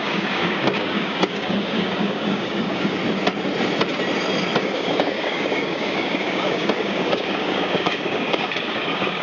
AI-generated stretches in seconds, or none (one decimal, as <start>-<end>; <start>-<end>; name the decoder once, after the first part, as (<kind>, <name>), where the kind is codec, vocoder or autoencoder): 0.0-3.0 (codec, DAC); 4.6-9.2